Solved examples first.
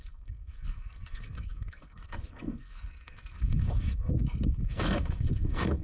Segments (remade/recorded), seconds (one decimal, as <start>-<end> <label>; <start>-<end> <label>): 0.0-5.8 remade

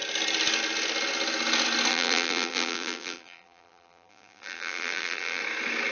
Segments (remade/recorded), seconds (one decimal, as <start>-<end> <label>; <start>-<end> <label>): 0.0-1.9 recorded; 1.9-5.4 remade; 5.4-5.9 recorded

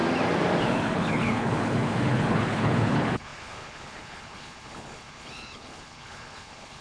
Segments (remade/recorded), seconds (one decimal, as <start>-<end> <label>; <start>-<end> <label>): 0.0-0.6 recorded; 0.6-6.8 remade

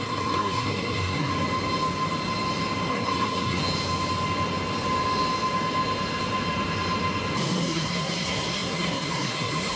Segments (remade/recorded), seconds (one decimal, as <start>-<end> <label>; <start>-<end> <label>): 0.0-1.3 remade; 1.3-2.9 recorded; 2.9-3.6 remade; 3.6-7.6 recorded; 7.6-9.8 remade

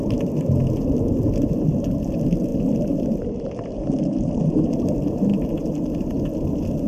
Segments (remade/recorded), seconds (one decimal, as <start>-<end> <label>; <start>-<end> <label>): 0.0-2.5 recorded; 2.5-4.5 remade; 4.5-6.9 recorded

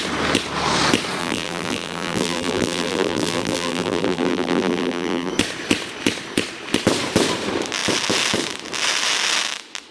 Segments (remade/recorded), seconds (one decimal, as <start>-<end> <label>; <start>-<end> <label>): 0.0-1.2 recorded; 1.2-5.3 remade; 5.3-9.9 recorded

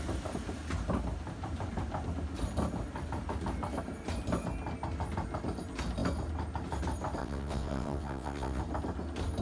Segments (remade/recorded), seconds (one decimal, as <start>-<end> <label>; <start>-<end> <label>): 0.0-7.2 recorded; 7.2-8.6 remade; 8.6-9.4 recorded

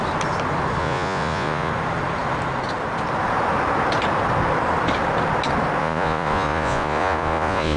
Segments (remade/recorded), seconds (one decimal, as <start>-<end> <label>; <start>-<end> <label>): 0.0-0.8 recorded; 0.8-1.7 remade; 1.7-5.8 recorded; 5.8-7.8 remade